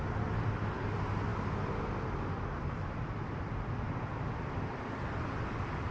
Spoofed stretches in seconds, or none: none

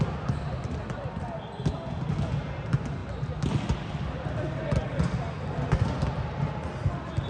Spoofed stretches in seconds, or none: none

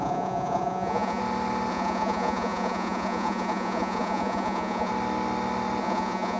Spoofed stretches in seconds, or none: 0.0-1.2 (vocoder, Vocos); 1.7-4.9; 5.8-6.4

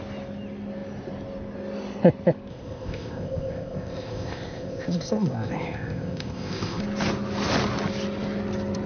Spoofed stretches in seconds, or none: 2.5-6.8 (codec, ZipCodec)

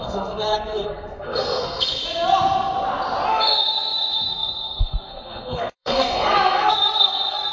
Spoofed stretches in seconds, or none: 0.0-2.0 (codec, SNAC); 3.3-7.5

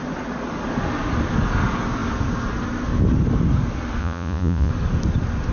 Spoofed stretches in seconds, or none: 4.0-4.7 (vocoder, Vocos)

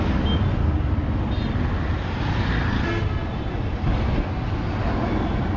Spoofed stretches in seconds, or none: none

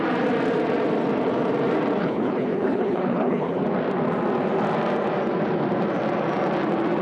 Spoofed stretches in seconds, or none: 2.0-3.6 (codec, HILCodec)